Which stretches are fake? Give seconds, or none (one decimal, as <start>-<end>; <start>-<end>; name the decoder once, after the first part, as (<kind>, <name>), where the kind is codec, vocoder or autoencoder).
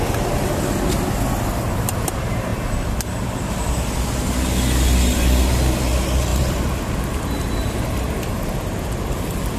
6.3-9.0 (vocoder, BigVGAN v2)